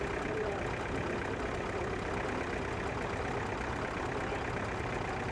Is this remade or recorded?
recorded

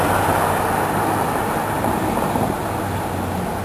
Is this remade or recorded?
recorded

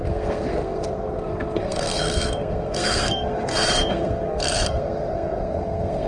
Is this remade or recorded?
remade